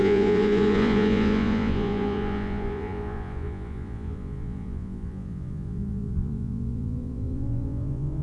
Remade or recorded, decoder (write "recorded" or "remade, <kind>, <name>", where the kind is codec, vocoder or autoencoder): remade, vocoder, Vocos